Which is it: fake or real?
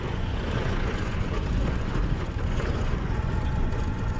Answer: fake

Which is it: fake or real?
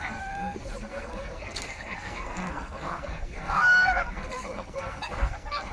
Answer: fake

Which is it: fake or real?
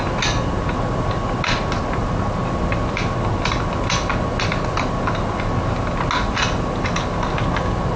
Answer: real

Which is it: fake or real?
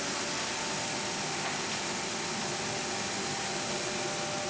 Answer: real